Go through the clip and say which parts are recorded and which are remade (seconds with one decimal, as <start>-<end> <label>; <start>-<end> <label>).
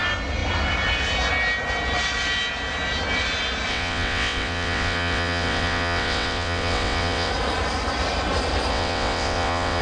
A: 0.0-3.7 recorded; 3.7-7.3 remade; 7.3-8.7 recorded; 8.7-9.8 remade